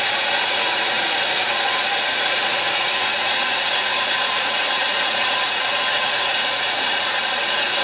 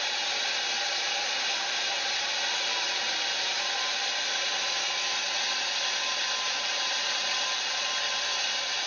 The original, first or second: second